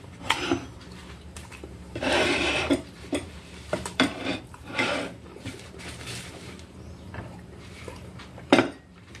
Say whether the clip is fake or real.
fake